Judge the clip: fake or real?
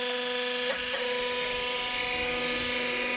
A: real